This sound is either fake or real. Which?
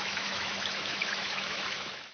fake